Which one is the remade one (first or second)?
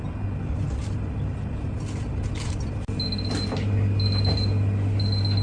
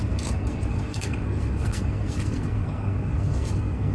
second